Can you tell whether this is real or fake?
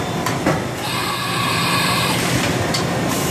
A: fake